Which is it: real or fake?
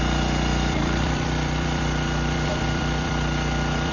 fake